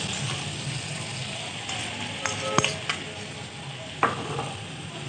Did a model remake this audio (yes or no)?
no